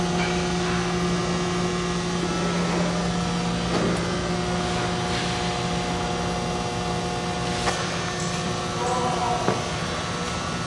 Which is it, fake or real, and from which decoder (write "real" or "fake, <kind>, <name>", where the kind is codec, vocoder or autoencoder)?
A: real